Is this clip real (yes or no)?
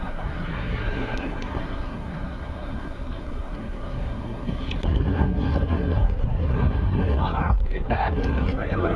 no